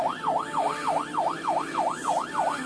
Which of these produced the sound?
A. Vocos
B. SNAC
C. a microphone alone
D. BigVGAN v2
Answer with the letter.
C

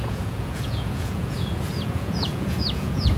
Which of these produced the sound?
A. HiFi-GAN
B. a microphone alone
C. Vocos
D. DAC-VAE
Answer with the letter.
C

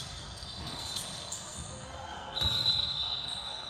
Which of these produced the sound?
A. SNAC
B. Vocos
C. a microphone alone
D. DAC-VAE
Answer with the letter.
A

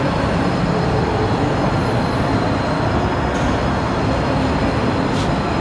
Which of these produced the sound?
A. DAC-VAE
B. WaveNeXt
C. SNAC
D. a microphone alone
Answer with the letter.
D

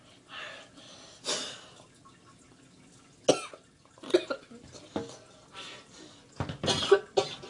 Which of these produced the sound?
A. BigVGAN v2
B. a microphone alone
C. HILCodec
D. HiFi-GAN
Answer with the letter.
B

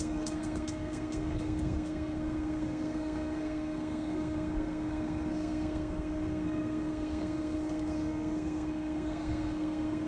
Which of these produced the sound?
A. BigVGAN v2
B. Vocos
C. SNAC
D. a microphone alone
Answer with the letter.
C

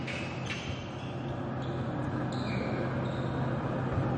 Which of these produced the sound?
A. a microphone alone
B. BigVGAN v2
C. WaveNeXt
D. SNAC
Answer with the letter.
A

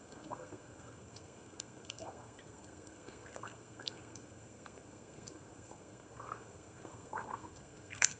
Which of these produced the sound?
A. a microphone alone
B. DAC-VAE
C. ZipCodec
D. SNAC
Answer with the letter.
D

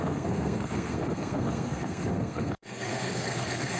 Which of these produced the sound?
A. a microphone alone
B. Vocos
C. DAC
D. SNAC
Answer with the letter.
D